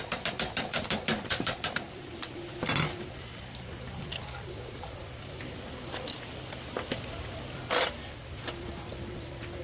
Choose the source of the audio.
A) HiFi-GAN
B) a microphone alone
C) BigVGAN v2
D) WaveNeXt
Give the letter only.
B